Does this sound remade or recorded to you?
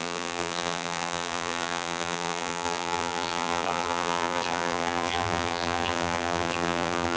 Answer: remade